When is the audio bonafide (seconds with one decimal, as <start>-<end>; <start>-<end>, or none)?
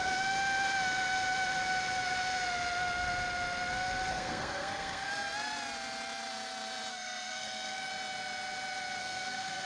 0.0-4.1; 5.1-6.9; 7.9-9.0